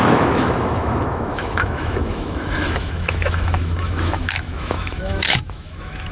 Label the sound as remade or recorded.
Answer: remade